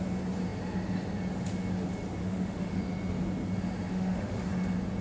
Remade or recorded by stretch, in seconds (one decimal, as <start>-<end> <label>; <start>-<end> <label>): 0.0-2.2 recorded; 2.2-2.8 remade; 2.8-3.9 recorded; 3.9-4.5 remade; 4.5-5.0 recorded